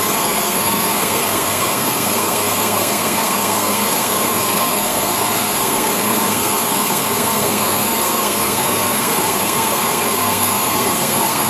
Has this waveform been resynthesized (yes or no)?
yes